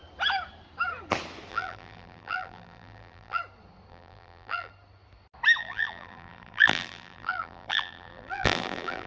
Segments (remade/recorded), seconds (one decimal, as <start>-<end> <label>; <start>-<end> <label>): 0.0-1.5 recorded; 1.5-3.4 remade; 3.4-3.9 recorded; 3.9-4.7 remade; 4.7-5.6 recorded; 5.6-9.1 remade